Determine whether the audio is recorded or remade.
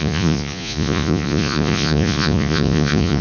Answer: remade